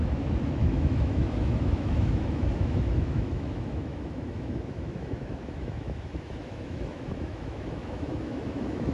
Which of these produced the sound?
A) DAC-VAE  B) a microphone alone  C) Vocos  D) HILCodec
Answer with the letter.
A